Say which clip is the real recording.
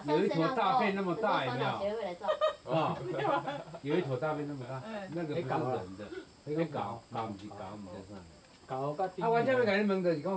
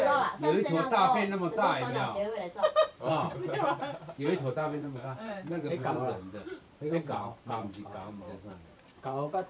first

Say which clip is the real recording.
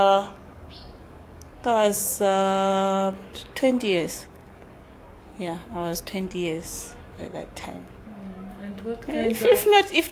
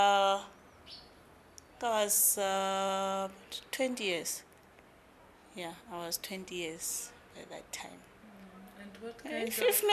second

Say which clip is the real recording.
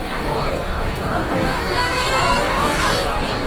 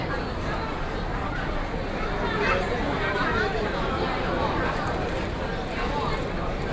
second